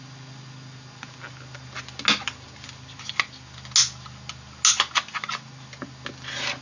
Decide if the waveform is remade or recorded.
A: recorded